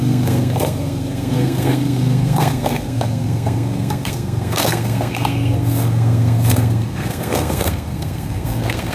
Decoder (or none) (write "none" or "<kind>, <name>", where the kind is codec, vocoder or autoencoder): codec, SNAC